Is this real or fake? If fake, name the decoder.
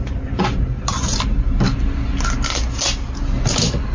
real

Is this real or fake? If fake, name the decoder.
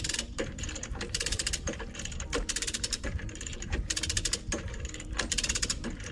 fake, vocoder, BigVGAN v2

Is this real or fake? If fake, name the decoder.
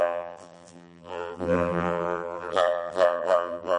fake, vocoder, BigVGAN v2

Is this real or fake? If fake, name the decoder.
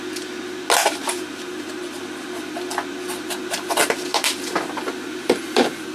real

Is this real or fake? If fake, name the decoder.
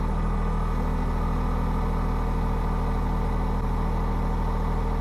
real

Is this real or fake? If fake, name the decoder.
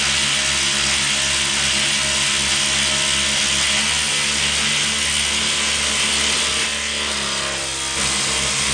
real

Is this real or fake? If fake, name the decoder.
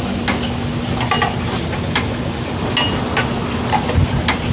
real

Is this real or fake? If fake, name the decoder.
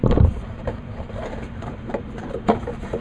fake, vocoder, BigVGAN v2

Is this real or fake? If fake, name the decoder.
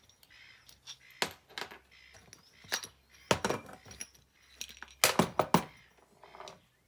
real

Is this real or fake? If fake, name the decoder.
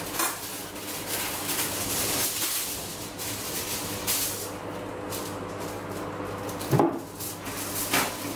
real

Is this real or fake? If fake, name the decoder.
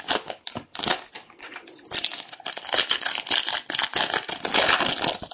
real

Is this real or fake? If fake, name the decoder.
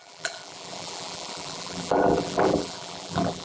fake, vocoder, BigVGAN v2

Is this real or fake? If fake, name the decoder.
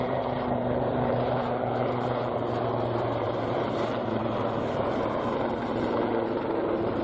fake, vocoder, BigVGAN v2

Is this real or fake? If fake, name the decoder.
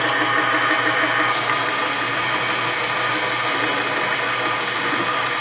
real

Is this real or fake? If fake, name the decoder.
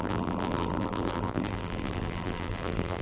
fake, vocoder, BigVGAN v2